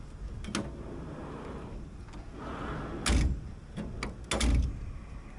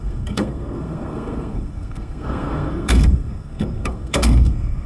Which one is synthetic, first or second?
second